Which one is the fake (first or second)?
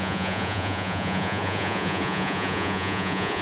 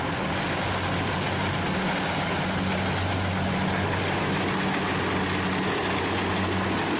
first